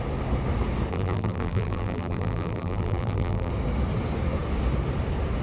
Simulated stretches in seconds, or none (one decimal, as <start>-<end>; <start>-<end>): 0.9-3.5